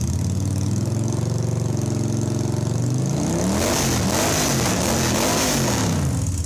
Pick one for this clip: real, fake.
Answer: real